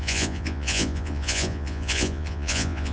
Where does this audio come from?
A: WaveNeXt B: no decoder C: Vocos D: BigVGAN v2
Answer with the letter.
C